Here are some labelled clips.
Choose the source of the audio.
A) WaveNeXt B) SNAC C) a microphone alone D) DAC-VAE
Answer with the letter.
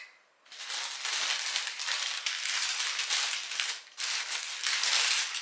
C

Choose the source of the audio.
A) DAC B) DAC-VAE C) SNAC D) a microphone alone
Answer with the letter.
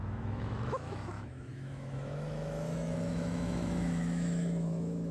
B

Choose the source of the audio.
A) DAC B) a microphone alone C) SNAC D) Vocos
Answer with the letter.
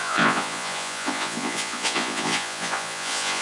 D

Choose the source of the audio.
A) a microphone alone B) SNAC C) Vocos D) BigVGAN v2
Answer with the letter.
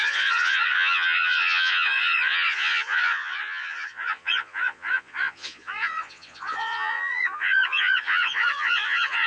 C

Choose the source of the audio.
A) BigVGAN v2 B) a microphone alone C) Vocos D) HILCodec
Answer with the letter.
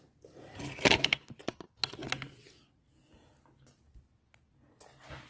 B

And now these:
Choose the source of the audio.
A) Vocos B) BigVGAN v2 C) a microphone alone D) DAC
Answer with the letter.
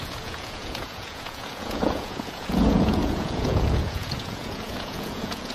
A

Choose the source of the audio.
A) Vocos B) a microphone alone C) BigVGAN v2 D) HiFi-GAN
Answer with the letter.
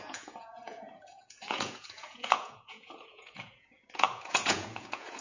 A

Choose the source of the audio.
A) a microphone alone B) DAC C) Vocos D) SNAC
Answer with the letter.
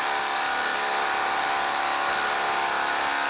A